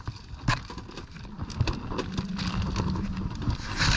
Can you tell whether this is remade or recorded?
recorded